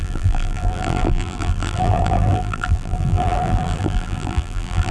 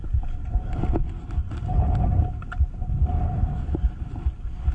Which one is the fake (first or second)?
first